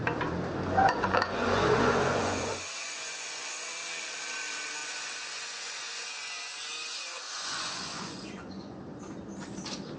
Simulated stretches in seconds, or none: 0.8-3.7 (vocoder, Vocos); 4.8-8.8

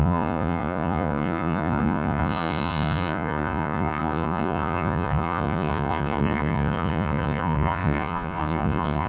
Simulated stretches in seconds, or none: 0.0-9.1 (vocoder, Vocos)

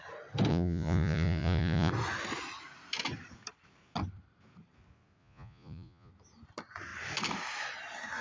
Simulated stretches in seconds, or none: 0.5-1.9 (vocoder, Vocos); 5.2-6.1

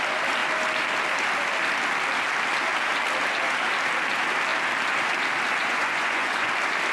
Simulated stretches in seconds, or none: 5.6-6.5 (vocoder, Vocos)

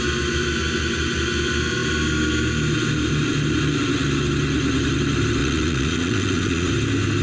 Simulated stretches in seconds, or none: 5.4-6.7 (vocoder, Vocos)

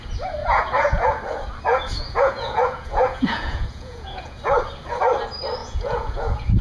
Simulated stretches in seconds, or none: 0.4-1.1 (vocoder, Vocos); 1.7-4.4; 5.6-6.6

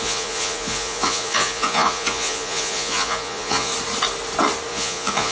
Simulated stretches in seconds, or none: 0.0-3.7 (vocoder, Vocos); 4.7-5.3

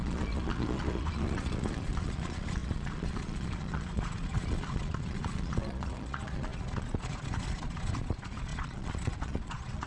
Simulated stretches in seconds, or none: 0.0-9.9 (vocoder, Vocos)